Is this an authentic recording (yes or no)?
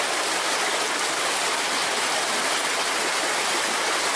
yes